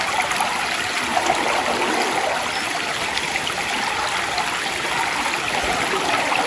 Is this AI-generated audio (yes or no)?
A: no